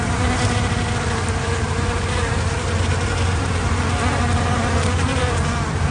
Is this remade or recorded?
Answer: recorded